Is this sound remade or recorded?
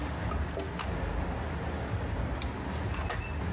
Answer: recorded